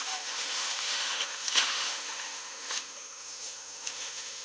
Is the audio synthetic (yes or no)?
yes